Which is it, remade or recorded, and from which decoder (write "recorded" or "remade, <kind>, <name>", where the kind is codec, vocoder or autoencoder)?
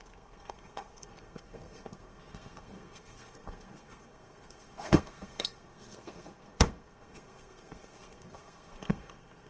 remade, codec, SNAC